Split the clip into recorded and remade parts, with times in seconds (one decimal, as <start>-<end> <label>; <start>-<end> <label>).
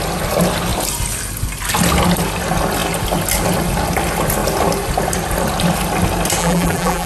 0.0-6.4 recorded; 6.4-7.1 remade